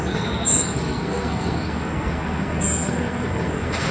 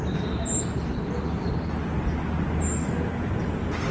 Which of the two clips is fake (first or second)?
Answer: first